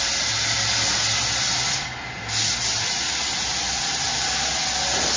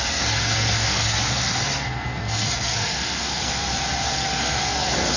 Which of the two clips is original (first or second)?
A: first